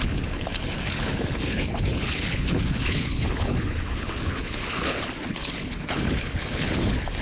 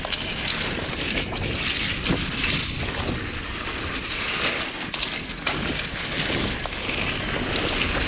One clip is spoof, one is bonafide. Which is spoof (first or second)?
first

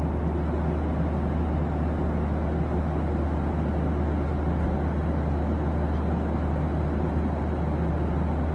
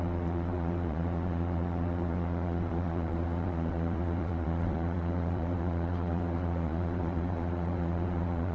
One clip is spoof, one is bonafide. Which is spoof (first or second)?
second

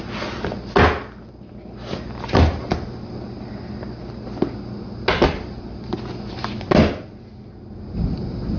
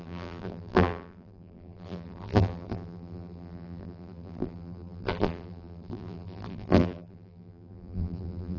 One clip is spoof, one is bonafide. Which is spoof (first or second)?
second